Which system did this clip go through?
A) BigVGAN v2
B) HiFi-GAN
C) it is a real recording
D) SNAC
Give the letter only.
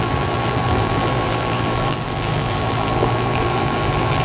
A